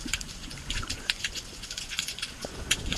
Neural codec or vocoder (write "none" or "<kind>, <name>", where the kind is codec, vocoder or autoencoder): vocoder, Vocos